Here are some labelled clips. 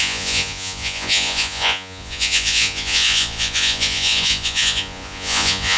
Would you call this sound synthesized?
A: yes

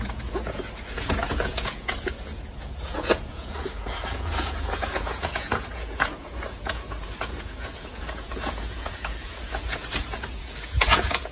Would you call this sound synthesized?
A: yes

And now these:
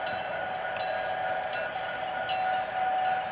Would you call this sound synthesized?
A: no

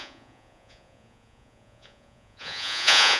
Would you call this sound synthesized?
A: yes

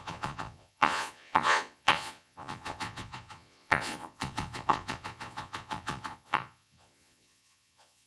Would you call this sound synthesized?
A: yes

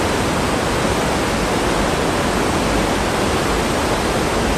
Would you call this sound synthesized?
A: no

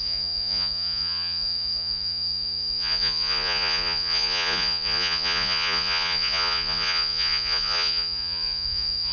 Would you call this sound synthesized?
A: yes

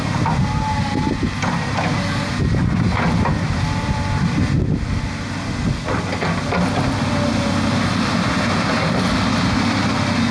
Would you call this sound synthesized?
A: no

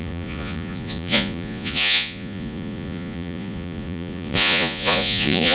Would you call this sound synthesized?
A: yes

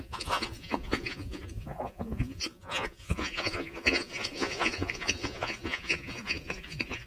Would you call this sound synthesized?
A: yes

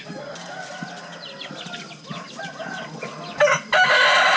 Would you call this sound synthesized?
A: no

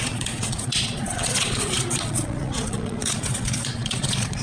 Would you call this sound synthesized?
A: yes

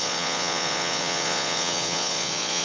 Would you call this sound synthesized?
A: yes